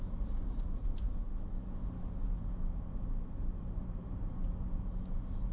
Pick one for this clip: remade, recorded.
remade